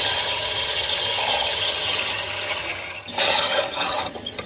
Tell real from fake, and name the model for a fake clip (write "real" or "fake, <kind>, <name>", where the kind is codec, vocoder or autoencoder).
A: fake, vocoder, HiFi-GAN